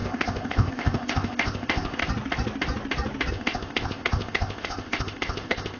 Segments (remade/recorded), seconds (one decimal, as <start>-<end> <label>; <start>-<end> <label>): 0.0-2.0 remade; 2.0-3.3 recorded; 3.3-5.8 remade